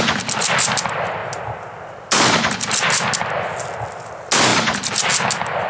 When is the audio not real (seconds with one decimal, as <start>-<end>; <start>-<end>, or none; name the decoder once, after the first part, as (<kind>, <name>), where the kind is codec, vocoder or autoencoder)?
4.5-5.1 (vocoder, BigVGAN v2)